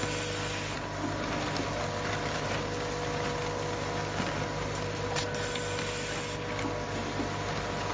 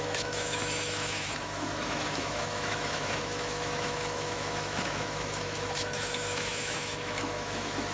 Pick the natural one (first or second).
first